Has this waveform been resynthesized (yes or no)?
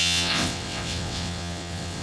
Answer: yes